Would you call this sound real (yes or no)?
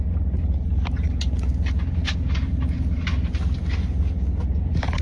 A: yes